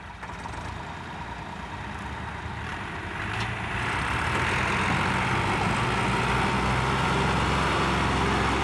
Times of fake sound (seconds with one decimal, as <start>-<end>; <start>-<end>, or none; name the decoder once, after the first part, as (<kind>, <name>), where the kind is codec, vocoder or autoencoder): 2.7-5.8 (vocoder, BigVGAN v2)